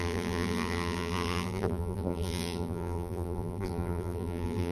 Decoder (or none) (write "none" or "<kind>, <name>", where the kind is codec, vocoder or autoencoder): vocoder, BigVGAN v2